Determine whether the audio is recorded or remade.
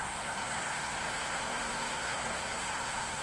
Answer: remade